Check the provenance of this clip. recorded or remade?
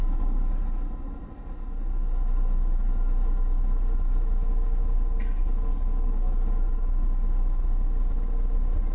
recorded